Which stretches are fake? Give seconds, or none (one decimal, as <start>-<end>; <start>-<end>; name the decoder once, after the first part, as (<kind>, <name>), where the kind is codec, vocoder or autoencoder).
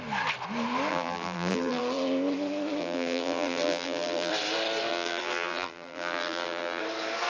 0.9-1.8 (vocoder, BigVGAN v2); 2.8-4.3; 4.9-6.8